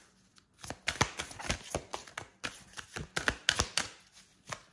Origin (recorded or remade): recorded